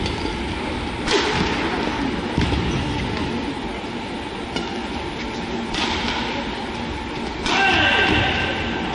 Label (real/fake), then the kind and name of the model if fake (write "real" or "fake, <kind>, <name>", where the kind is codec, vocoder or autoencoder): real